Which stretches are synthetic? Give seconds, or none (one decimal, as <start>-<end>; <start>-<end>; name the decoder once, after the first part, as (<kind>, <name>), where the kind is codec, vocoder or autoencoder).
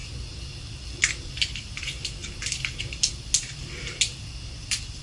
none